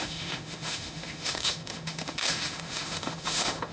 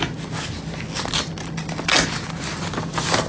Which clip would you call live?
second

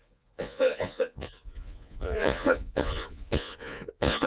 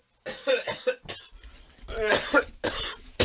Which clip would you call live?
second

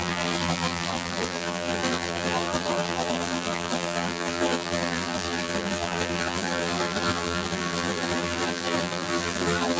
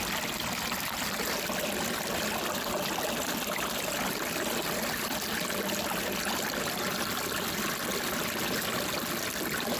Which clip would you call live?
second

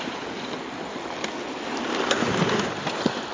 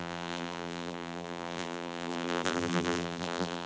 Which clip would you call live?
first